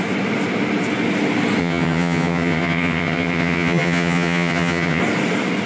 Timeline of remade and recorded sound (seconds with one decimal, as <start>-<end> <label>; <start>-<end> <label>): 0.0-1.6 recorded; 1.6-5.0 remade; 5.0-5.7 recorded